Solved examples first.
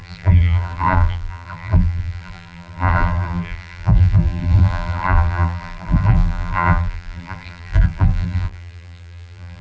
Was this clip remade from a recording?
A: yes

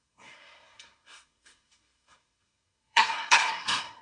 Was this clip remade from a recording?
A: yes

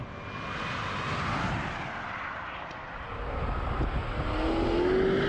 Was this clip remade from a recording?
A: no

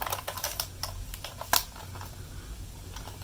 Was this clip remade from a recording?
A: no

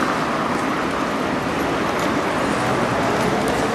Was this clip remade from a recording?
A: no